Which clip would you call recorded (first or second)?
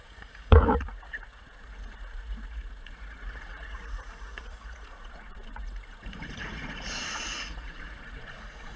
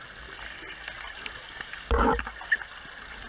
second